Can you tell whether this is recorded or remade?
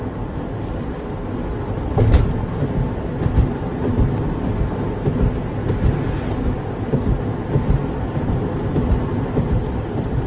recorded